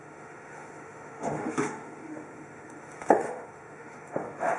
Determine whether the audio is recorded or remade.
remade